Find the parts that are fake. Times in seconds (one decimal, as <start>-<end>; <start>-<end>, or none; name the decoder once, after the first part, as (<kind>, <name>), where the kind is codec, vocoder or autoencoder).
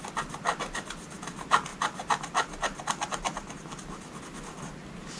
none